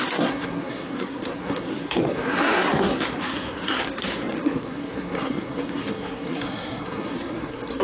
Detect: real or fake fake